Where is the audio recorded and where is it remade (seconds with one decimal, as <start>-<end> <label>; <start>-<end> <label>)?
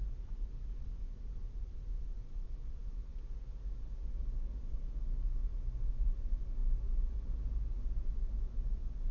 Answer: 0.0-9.1 recorded